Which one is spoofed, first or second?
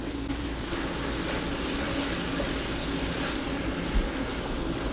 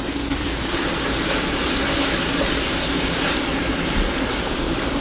second